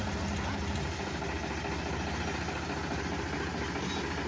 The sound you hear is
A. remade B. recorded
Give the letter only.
B